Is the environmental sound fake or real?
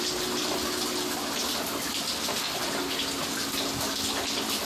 real